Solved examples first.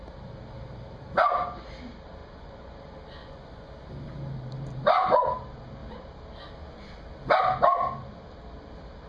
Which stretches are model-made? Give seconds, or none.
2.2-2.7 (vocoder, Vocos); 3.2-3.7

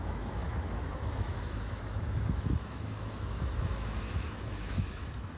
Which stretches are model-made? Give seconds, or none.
0.0-5.4 (autoencoder, DAC-VAE)

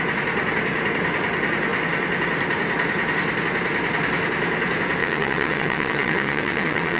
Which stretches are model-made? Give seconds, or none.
5.0-7.0 (vocoder, WaveNeXt)

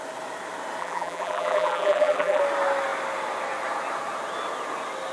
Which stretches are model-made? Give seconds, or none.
0.8-2.4 (vocoder, BigVGAN v2)

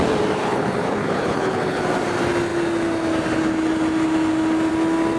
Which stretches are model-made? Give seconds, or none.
0.4-1.8 (codec, HILCodec)

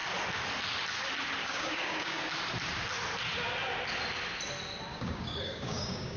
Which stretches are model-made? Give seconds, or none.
1.4-2.2 (codec, DAC); 4.9-6.2

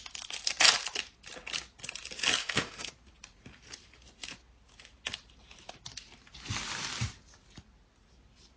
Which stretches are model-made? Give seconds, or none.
2.4-2.9 (autoencoder, DAC-VAE)